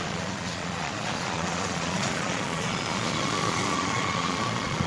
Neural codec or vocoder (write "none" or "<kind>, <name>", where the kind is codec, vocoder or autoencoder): vocoder, Vocos